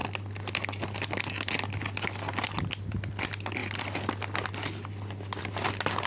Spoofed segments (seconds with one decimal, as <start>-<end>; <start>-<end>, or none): none